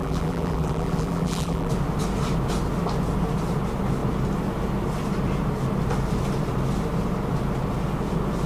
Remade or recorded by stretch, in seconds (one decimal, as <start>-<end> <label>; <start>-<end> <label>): 0.0-1.7 remade; 1.7-8.5 recorded

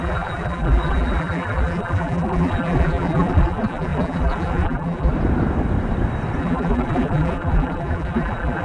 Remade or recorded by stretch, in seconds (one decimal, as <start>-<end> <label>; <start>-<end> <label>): 0.0-5.1 remade; 5.1-6.4 recorded; 6.4-8.6 remade

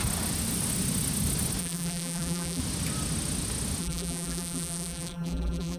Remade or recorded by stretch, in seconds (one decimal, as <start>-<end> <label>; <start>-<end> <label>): 0.0-1.6 recorded; 1.6-2.6 remade; 2.6-3.8 recorded; 3.8-5.8 remade

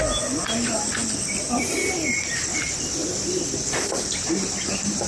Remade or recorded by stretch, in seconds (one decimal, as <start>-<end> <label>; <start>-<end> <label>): 0.0-3.0 recorded; 3.0-4.2 remade; 4.2-5.1 recorded

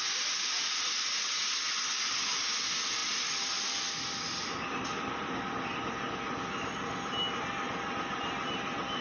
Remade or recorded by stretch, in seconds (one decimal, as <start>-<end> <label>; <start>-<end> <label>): 0.0-9.0 recorded

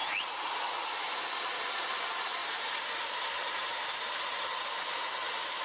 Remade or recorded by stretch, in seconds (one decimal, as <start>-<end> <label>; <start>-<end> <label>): 0.0-5.6 recorded

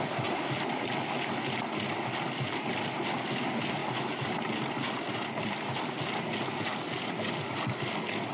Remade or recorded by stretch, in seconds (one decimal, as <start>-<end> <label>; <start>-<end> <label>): 0.0-3.8 recorded; 3.8-4.7 remade; 4.7-8.3 recorded